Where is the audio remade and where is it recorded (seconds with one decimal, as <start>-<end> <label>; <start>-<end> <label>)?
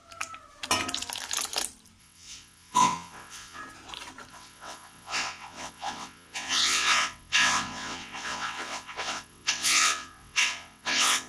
0.0-2.0 recorded; 2.0-3.6 remade; 3.6-4.3 recorded; 4.3-11.3 remade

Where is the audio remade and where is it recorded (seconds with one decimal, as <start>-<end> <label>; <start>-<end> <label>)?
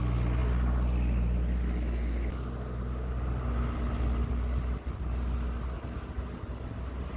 0.0-7.2 recorded